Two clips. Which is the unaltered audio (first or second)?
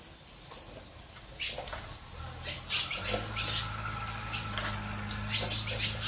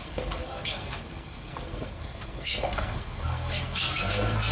first